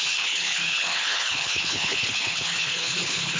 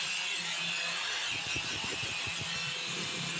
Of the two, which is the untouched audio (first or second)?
second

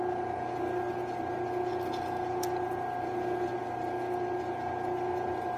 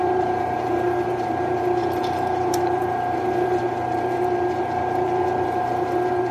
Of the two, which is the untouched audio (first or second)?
first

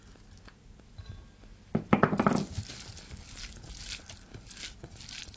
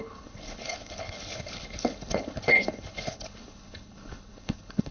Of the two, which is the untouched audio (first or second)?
first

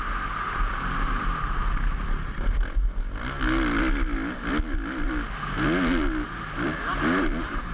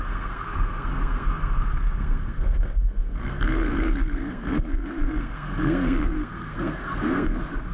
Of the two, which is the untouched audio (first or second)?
first